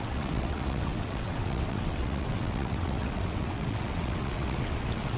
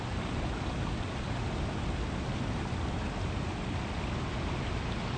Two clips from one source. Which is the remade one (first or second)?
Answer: first